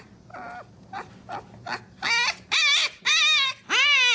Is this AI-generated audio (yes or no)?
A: no